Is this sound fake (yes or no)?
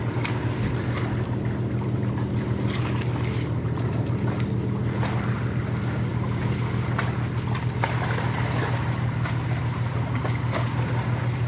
no